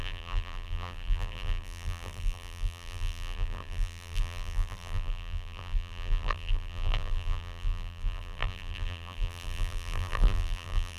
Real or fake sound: fake